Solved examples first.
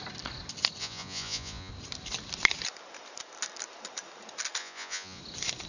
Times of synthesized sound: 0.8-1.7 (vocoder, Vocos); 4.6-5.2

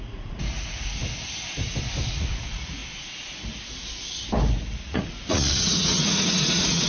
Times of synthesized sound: 0.0-1.0 (vocoder, Vocos); 2.1-2.8; 4.9-6.9